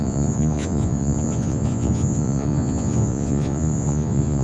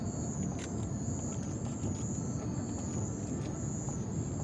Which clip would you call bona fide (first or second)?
second